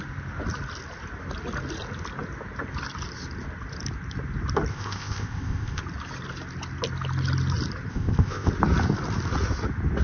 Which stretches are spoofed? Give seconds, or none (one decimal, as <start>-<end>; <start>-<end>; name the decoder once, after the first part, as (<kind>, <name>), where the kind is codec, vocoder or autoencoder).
4.7-5.8 (codec, ZipCodec); 7.9-8.5